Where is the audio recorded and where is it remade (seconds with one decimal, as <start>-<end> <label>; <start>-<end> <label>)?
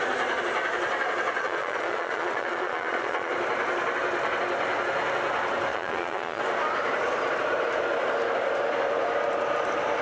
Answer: 0.0-1.4 recorded; 1.4-3.3 remade; 3.3-5.7 recorded; 5.7-6.4 remade; 6.4-10.0 recorded